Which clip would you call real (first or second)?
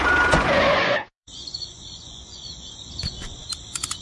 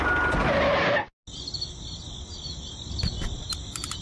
second